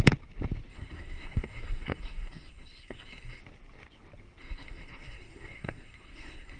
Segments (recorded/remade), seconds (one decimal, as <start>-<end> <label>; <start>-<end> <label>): 0.0-0.7 recorded; 0.7-3.4 remade; 3.4-4.4 recorded; 4.4-6.6 remade